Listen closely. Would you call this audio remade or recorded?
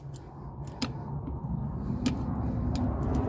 recorded